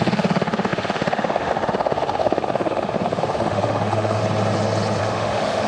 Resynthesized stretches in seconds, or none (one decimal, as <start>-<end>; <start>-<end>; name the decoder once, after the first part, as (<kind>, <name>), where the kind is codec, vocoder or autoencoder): 0.0-4.2 (autoencoder, DAC-VAE); 5.0-5.7